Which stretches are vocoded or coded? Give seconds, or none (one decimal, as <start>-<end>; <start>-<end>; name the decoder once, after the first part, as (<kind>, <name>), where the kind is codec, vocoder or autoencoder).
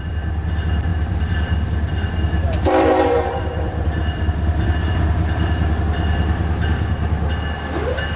0.9-5.8 (vocoder, BigVGAN v2)